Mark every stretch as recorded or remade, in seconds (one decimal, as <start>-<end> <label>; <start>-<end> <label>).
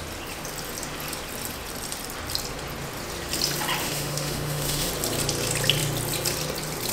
0.0-3.8 recorded; 3.8-4.9 remade; 4.9-6.9 recorded